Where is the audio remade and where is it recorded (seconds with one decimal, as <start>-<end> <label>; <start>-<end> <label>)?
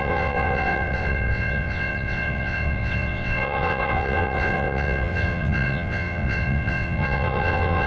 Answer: 0.0-7.9 remade